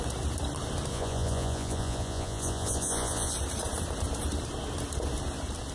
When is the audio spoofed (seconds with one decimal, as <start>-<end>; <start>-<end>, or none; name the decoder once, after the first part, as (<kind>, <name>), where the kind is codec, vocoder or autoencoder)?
0.9-3.3 (vocoder, Vocos)